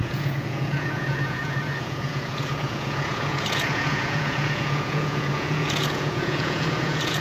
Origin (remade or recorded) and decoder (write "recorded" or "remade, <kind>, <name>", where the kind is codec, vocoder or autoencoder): remade, vocoder, Vocos